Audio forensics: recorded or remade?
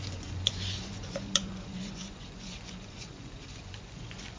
remade